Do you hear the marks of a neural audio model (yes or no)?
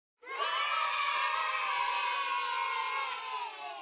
no